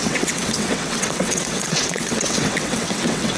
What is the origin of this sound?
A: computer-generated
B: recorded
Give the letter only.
A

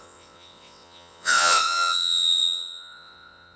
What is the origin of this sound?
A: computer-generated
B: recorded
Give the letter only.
A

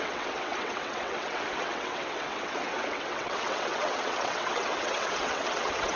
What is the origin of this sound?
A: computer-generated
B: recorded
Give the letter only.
A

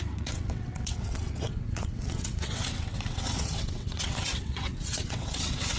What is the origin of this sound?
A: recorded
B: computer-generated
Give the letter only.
B